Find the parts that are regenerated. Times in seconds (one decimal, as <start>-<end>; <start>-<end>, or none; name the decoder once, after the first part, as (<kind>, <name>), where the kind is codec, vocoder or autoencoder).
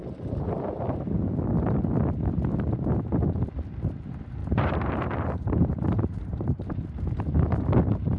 4.4-7.2 (vocoder, BigVGAN v2)